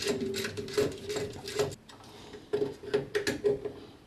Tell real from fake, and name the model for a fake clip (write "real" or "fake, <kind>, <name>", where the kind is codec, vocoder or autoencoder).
real